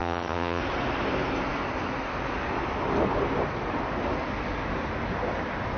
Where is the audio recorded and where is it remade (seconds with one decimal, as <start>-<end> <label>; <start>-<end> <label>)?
0.0-0.6 remade; 0.6-5.8 recorded